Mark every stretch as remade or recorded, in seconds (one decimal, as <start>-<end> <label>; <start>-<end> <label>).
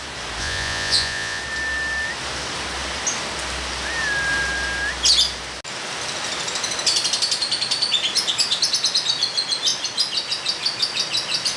0.0-0.4 recorded; 0.4-1.4 remade; 1.4-11.6 recorded